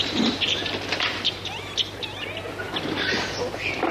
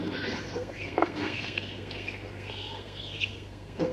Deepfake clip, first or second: second